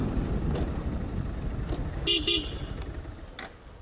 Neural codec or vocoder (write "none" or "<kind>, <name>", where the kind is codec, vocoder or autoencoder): none